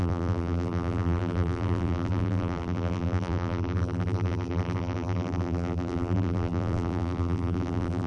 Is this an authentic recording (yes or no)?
no